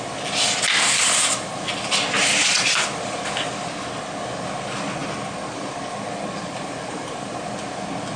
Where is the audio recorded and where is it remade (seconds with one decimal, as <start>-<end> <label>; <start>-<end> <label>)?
0.0-8.2 recorded